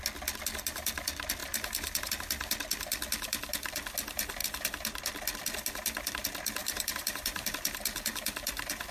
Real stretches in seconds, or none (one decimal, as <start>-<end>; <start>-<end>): 0.0-1.4; 2.1-6.6; 7.5-8.9